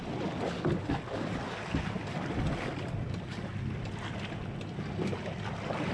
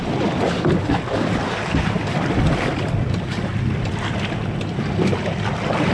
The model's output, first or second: second